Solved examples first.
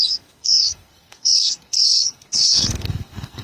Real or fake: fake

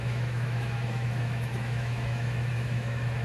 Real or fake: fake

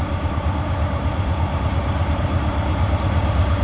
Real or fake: fake